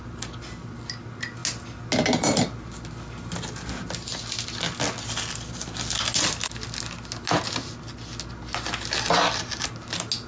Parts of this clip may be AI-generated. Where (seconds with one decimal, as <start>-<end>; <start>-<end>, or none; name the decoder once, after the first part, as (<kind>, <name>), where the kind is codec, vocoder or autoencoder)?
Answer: none